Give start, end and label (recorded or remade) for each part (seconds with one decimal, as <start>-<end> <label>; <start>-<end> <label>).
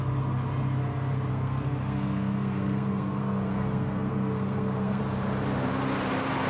0.0-1.3 recorded; 1.3-5.0 remade; 5.0-6.5 recorded